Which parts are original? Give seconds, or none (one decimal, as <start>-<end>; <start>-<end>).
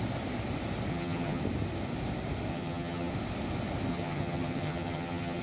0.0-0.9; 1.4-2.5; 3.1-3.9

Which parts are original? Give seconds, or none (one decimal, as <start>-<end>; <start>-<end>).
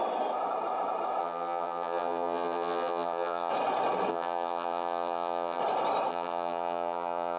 0.0-1.2; 3.5-4.1; 5.6-6.1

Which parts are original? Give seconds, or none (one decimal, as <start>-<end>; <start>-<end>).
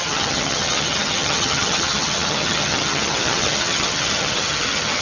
none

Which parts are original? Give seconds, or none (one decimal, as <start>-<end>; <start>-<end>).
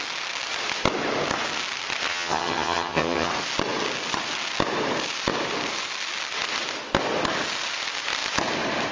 0.0-2.1; 3.3-8.9